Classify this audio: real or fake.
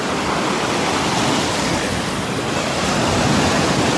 real